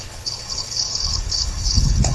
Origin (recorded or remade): remade